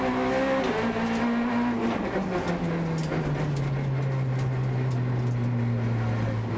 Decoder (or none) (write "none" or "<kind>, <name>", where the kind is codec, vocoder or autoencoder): none